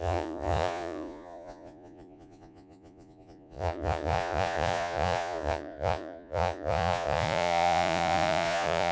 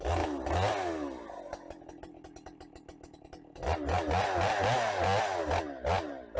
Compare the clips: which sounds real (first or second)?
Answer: second